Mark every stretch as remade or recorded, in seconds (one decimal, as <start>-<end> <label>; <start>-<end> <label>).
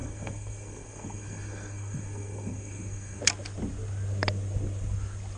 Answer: 0.0-3.2 remade; 3.2-5.4 recorded